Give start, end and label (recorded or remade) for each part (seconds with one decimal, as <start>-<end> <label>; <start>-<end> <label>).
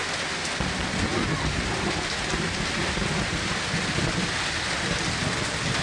0.0-5.8 recorded